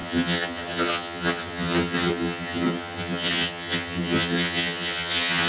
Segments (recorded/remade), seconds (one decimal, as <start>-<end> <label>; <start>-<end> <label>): 0.0-5.5 remade